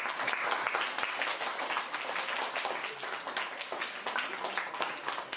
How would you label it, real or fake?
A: real